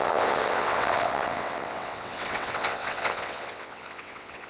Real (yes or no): no